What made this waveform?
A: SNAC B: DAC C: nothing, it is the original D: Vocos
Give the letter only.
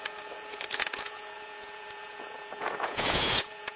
D